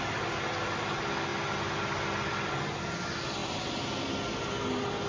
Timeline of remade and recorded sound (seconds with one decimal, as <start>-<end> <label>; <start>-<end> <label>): 0.0-5.1 recorded